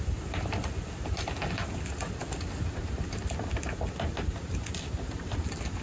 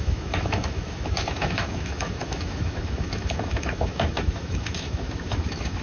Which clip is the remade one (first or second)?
second